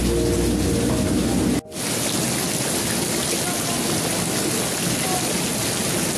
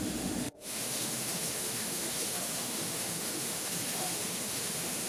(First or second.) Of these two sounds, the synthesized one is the second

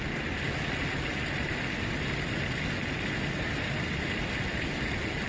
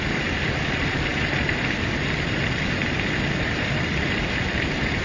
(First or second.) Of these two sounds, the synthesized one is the second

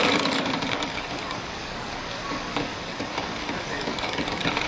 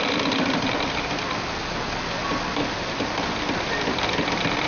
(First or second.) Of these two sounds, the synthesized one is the first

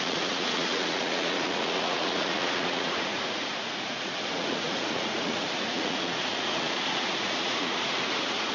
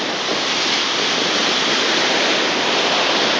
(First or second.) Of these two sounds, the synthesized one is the first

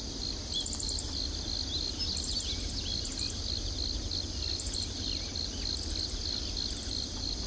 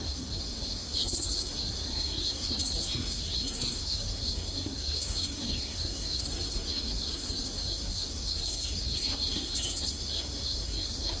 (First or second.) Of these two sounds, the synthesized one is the second